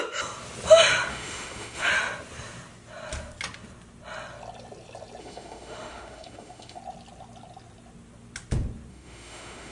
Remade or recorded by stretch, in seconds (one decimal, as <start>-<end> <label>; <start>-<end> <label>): 0.0-1.1 recorded; 1.1-1.9 remade; 1.9-5.2 recorded; 5.2-6.8 remade; 6.8-8.9 recorded; 8.9-9.7 remade